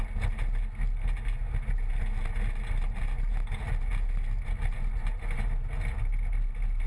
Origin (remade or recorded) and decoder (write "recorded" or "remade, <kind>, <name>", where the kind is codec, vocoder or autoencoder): recorded